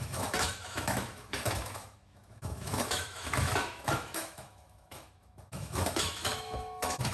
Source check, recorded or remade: remade